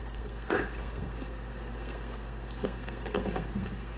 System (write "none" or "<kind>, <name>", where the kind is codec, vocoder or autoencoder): codec, SNAC